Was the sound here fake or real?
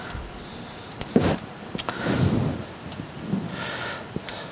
real